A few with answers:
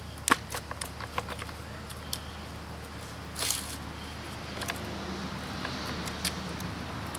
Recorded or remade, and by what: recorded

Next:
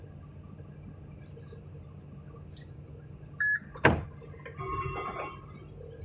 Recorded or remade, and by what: recorded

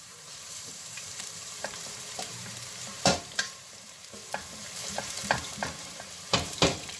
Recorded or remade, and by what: remade, vocoder, BigVGAN v2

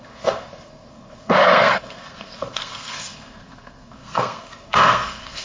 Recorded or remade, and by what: remade, codec, SNAC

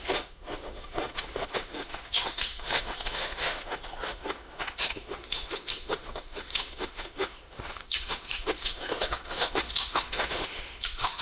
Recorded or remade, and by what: remade, autoencoder, DAC-VAE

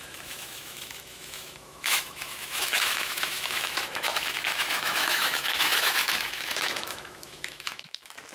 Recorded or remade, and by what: remade, autoencoder, DAC-VAE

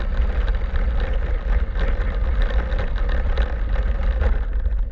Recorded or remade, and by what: recorded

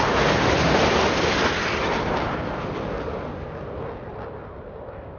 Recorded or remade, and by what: recorded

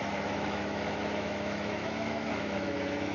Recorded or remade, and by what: remade, autoencoder, DAC-VAE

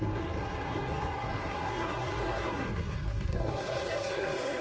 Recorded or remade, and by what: remade, codec, SNAC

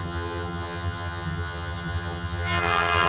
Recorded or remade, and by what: remade, vocoder, HiFi-GAN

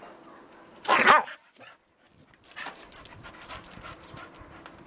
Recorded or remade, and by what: recorded